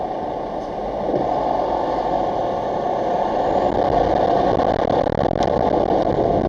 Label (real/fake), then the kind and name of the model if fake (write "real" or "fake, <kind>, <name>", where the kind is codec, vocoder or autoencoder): real